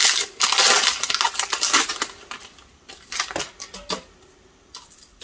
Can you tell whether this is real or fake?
real